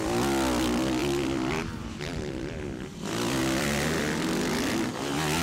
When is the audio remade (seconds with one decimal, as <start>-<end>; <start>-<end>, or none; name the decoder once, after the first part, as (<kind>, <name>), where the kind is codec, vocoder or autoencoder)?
1.0-2.4 (vocoder, BigVGAN v2); 3.4-4.9